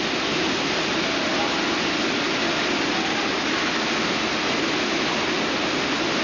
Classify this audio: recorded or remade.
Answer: recorded